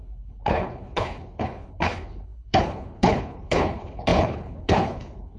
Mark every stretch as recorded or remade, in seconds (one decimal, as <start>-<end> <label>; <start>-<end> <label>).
0.0-5.4 remade